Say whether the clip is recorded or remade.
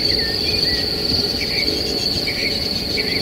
recorded